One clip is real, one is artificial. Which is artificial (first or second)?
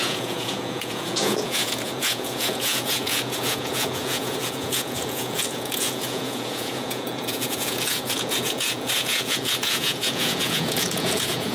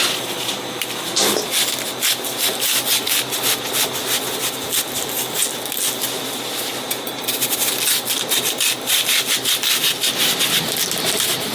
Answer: first